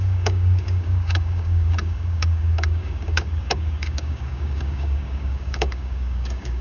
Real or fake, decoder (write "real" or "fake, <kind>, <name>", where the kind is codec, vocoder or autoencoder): fake, codec, DAC